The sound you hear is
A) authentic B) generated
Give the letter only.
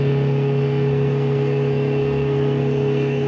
B